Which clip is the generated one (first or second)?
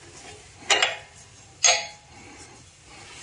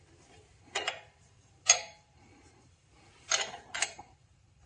second